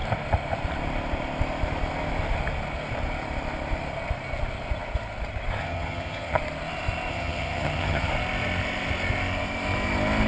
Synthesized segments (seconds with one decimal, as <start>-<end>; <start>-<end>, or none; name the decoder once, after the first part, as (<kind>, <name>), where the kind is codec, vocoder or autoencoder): 5.6-6.4 (vocoder, HiFi-GAN); 7.1-8.1